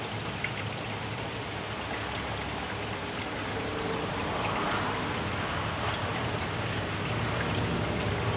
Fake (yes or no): no